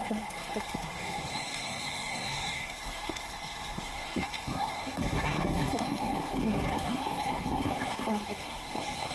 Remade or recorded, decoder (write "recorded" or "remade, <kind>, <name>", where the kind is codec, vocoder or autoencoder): remade, codec, SNAC